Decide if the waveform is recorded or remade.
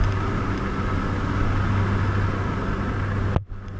recorded